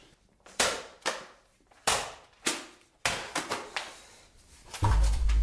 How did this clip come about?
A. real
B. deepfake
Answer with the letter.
A